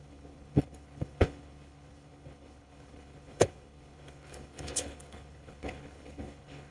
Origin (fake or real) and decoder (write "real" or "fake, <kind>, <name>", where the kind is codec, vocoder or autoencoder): fake, codec, HILCodec